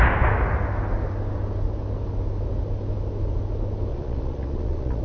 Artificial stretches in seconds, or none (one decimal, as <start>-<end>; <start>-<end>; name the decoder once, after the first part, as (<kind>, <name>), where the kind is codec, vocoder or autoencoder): 3.9-5.0 (vocoder, Vocos)